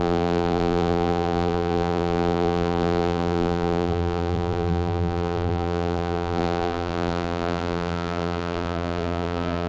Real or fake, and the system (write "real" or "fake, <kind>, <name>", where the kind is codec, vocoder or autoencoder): fake, vocoder, BigVGAN v2